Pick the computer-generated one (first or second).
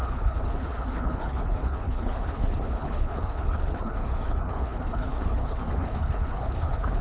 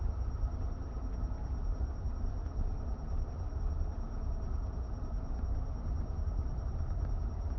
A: first